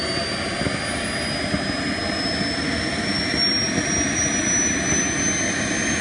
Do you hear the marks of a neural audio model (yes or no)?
no